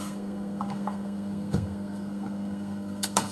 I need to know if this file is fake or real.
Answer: fake